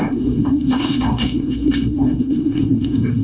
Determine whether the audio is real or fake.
fake